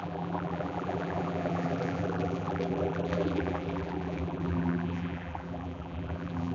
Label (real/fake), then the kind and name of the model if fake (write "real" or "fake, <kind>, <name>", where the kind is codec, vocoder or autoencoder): fake, vocoder, BigVGAN v2